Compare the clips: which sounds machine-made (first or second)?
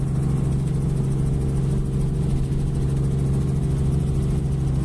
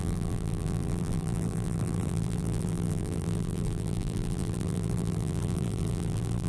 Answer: second